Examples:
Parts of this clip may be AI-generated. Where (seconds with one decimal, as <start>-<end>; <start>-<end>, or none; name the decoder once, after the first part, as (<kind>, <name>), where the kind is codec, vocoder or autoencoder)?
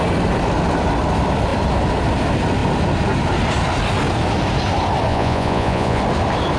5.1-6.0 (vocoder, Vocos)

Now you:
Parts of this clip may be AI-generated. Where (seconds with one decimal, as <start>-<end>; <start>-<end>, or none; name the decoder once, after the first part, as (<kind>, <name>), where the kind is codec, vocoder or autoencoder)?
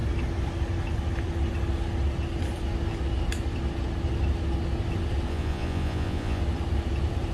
5.3-6.4 (vocoder, Vocos)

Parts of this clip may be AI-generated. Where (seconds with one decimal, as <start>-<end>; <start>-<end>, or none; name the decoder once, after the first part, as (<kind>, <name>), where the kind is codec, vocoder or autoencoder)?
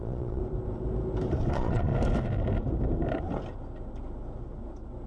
0.0-0.4 (vocoder, Vocos); 1.5-1.9